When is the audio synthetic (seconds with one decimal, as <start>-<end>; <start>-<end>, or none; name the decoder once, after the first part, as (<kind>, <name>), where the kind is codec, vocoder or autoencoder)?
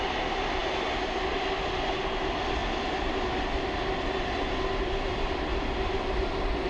none